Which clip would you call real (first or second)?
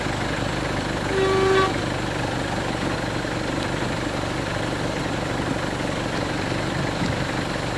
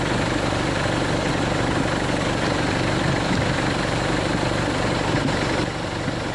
first